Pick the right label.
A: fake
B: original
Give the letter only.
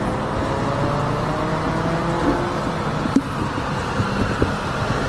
B